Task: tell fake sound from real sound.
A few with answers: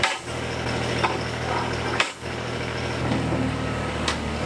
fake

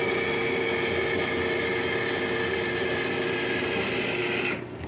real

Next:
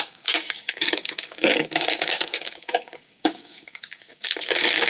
fake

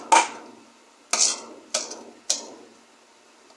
real